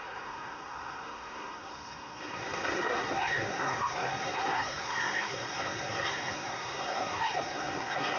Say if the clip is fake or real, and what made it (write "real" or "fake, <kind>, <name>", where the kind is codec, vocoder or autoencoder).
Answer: fake, codec, SNAC